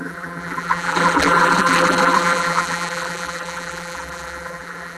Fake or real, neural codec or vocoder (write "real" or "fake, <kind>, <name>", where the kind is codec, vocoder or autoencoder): fake, vocoder, BigVGAN v2